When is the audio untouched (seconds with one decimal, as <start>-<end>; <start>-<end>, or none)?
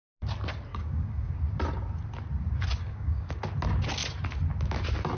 0.0-0.7; 1.3-2.8; 3.4-5.2